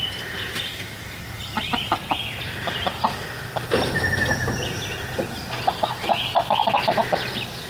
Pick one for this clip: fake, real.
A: real